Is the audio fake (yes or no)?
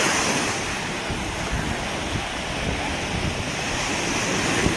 no